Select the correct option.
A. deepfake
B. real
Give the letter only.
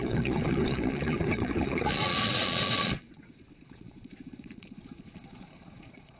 A